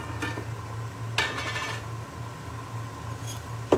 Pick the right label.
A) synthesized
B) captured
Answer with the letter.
B